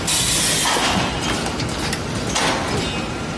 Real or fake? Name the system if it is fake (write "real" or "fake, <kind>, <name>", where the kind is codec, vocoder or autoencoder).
real